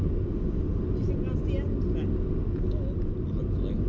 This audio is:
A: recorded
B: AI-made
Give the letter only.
A